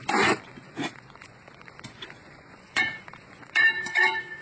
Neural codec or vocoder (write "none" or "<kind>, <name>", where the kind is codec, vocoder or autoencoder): vocoder, Vocos